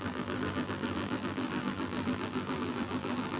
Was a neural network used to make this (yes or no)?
yes